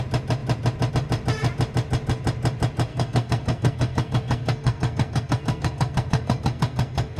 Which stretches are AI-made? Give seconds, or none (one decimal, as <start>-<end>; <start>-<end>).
2.9-7.2